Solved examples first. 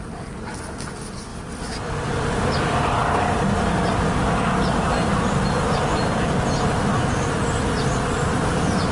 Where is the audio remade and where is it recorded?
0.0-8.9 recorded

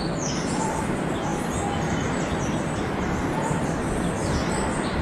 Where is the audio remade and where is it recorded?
0.0-5.0 recorded

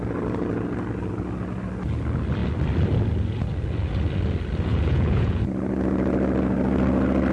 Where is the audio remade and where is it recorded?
0.0-4.7 recorded; 4.7-5.4 remade; 5.4-7.3 recorded